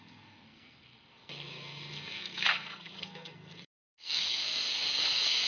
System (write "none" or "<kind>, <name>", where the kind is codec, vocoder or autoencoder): codec, SNAC